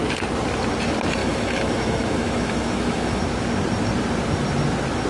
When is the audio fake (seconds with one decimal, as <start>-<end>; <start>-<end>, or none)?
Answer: 1.2-3.2